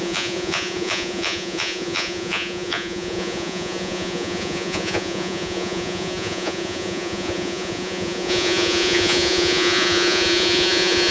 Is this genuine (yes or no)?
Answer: no